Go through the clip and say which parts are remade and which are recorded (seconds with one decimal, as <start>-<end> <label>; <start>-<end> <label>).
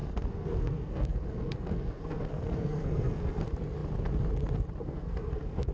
0.0-3.4 remade; 3.4-4.8 recorded; 4.8-5.7 remade